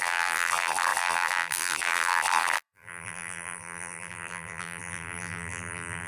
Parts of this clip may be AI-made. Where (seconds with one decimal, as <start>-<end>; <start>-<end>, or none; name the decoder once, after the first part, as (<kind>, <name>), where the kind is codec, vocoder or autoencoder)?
0.0-6.1 (vocoder, BigVGAN v2)